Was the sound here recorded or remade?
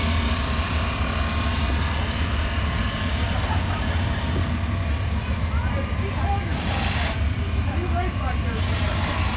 recorded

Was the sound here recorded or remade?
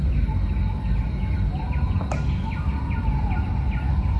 recorded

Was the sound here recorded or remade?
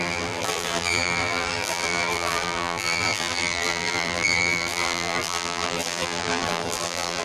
remade